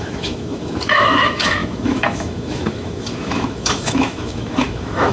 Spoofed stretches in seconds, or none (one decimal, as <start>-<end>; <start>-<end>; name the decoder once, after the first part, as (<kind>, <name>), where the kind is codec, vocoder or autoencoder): 0.0-5.1 (autoencoder, DAC-VAE)